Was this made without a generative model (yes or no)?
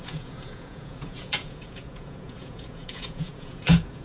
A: no